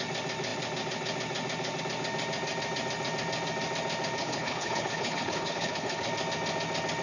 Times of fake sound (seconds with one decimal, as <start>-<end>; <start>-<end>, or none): 4.2-6.1

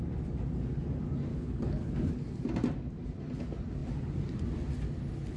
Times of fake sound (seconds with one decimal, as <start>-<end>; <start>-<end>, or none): 1.3-1.9

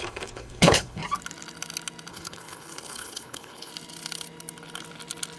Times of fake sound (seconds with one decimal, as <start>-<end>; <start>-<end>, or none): 0.0-1.0; 2.1-3.7

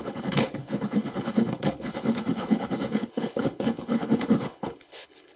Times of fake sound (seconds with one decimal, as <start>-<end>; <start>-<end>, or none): 0.0-5.4

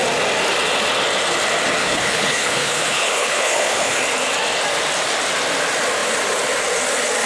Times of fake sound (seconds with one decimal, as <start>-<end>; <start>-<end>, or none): 1.8-4.0

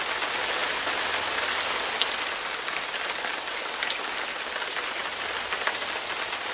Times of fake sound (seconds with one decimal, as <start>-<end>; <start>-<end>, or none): none

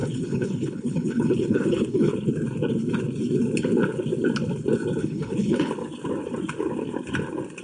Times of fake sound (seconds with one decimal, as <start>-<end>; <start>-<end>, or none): 0.0-2.1; 5.0-5.7